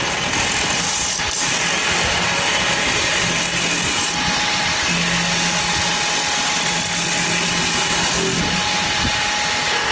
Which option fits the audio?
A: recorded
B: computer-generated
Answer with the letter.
A